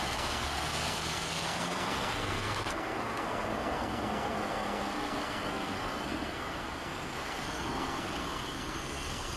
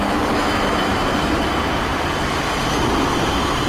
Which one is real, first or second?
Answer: second